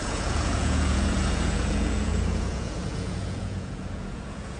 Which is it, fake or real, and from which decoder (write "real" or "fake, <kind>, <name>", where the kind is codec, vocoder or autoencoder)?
fake, vocoder, Vocos